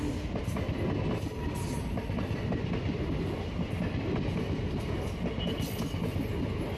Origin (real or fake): real